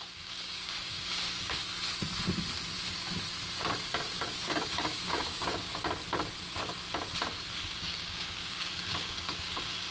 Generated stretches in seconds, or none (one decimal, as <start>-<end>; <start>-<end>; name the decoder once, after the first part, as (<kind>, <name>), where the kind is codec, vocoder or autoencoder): 0.0-1.6 (codec, DAC); 4.1-5.7; 7.7-9.9